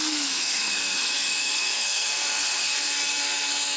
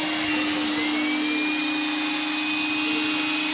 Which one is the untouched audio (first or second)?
second